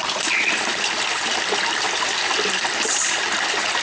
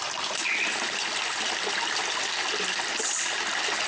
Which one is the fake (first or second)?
first